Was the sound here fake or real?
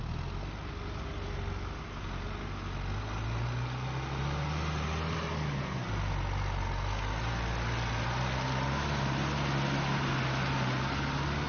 real